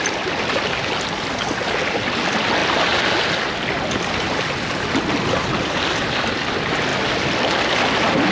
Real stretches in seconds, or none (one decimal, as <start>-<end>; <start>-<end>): 0.0-8.3